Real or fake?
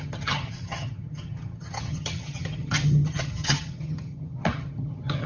fake